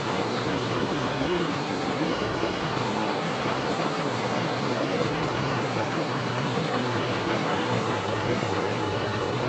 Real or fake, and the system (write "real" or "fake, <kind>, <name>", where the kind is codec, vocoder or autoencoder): fake, codec, SNAC